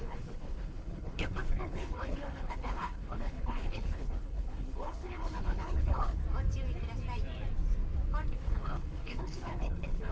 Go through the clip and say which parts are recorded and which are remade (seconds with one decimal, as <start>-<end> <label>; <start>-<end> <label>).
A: 0.0-6.2 remade; 6.2-8.3 recorded; 8.3-10.1 remade

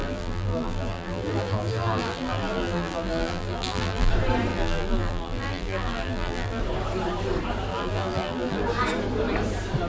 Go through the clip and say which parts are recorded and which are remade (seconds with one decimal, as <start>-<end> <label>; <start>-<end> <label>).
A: 0.0-4.1 remade; 4.1-4.5 recorded; 4.5-6.6 remade; 6.6-7.7 recorded; 7.7-8.6 remade; 8.6-9.9 recorded

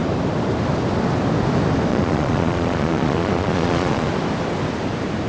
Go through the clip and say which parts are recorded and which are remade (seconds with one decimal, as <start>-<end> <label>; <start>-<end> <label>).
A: 0.0-1.9 recorded; 1.9-4.1 remade; 4.1-5.3 recorded